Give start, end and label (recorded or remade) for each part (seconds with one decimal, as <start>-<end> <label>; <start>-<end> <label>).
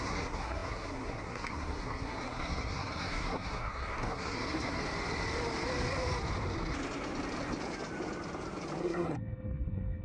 0.0-4.8 remade; 4.8-8.8 recorded; 8.8-10.0 remade